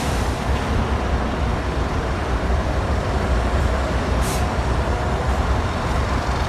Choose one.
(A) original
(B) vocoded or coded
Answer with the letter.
B